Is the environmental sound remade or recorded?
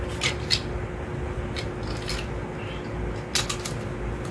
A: recorded